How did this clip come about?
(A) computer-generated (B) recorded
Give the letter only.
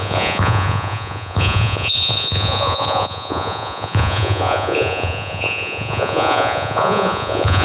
A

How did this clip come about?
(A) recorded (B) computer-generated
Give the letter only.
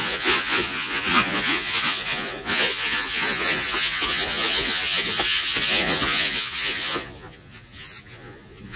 B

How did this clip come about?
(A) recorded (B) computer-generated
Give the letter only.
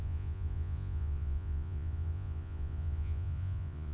B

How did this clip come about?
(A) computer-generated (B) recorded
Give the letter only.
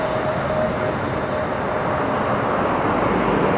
B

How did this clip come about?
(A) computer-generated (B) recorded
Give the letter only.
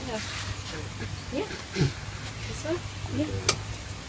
B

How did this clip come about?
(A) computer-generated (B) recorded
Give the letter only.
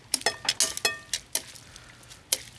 B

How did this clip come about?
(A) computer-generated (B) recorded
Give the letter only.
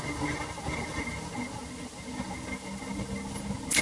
B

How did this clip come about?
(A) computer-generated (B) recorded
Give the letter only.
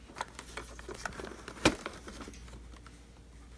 B